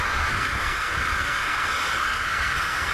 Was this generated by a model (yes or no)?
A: yes